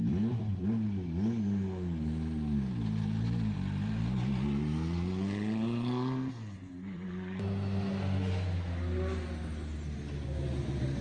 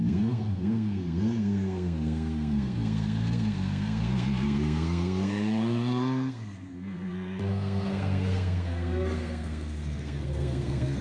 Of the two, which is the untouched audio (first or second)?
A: first